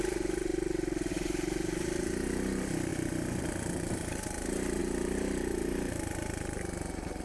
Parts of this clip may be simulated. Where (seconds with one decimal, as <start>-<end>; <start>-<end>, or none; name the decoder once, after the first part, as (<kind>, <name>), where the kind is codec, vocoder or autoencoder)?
0.0-0.5 (vocoder, BigVGAN v2); 1.1-7.2